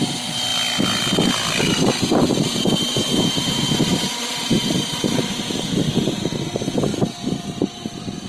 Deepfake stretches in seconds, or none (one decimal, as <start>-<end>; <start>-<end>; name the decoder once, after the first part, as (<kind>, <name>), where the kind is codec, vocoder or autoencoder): 0.0-0.5 (vocoder, BigVGAN v2); 1.6-8.3